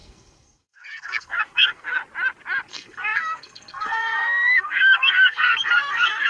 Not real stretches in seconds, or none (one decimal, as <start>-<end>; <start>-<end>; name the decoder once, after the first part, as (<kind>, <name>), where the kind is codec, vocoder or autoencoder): 0.0-2.0 (codec, SNAC); 2.7-6.3